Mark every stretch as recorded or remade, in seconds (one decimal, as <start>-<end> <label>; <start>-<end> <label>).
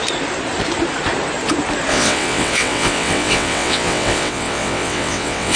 0.0-1.9 recorded; 1.9-5.6 remade